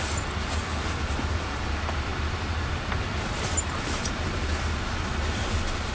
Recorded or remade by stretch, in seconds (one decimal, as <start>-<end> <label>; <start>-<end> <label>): 0.0-5.9 recorded